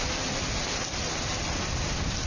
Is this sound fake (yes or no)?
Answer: no